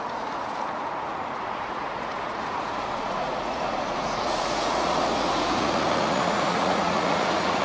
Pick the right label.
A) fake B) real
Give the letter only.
A